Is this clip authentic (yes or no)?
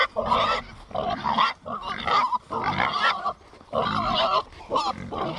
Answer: yes